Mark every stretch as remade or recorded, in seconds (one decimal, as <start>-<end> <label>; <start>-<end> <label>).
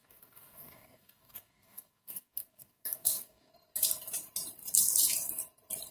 0.0-3.5 remade; 3.5-5.9 recorded